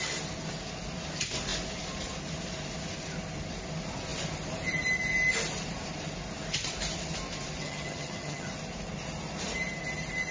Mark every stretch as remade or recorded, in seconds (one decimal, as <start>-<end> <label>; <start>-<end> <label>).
0.0-7.6 recorded; 7.6-8.5 remade; 8.5-10.3 recorded

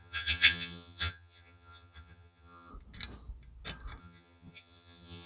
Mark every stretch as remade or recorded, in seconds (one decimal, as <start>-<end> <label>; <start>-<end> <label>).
0.0-2.7 remade; 2.7-4.0 recorded; 4.0-5.3 remade